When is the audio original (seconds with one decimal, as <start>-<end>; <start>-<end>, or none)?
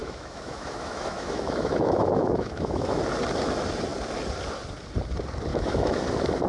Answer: 3.0-5.5; 6.0-6.5